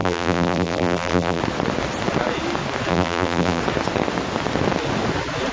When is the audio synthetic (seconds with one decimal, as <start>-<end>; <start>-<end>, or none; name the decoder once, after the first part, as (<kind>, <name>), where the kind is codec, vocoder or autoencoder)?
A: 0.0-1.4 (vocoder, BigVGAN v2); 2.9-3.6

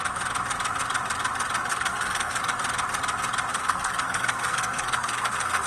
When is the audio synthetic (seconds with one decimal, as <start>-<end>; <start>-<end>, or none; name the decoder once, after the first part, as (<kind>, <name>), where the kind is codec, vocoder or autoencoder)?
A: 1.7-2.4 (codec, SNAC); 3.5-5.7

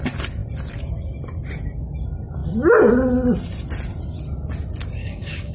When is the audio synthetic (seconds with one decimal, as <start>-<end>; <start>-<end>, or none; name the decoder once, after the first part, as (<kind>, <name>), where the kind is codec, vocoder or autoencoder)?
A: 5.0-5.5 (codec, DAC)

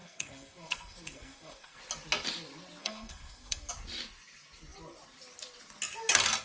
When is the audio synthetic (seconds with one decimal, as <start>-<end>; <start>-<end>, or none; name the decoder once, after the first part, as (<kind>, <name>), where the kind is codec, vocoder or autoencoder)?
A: 0.0-1.8 (codec, SNAC); 2.8-3.7

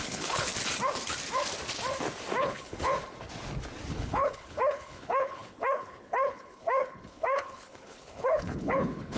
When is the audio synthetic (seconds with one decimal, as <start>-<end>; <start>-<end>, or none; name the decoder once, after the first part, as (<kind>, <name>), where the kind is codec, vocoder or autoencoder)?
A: 0.0-0.5 (codec, HILCodec); 2.4-3.0; 3.9-9.2

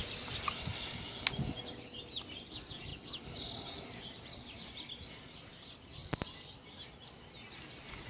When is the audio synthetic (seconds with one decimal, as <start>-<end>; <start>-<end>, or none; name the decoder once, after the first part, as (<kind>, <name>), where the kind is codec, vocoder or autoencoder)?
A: 0.0-2.9 (vocoder, BigVGAN v2); 4.9-6.0

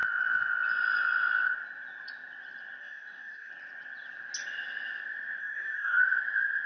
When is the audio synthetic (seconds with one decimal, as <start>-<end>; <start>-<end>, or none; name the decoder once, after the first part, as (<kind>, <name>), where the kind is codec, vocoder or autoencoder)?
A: 2.8-3.5 (codec, DAC); 5.4-6.0